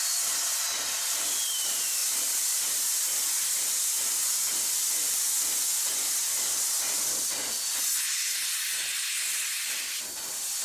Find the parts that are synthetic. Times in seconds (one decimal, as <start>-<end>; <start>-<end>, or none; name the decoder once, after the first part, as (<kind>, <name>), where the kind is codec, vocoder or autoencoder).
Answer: none